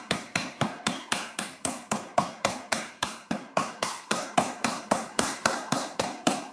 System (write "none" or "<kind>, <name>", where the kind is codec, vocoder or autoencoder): codec, SNAC